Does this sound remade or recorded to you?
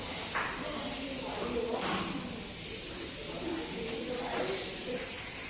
recorded